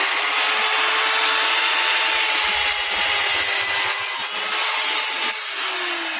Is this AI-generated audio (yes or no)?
no